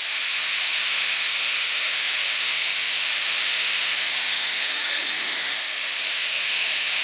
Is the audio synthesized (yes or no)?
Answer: yes